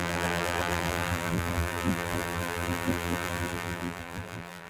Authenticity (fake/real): fake